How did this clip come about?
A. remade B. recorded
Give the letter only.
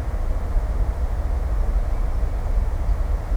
B